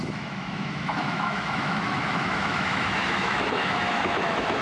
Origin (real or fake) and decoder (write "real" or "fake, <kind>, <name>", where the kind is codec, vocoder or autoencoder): fake, autoencoder, DAC-VAE